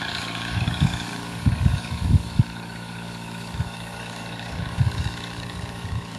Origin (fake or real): fake